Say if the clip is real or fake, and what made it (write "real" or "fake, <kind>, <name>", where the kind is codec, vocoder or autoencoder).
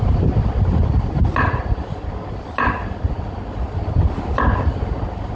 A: real